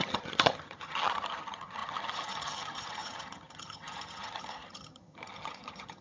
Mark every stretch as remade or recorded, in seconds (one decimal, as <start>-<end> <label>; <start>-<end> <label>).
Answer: 0.0-6.0 remade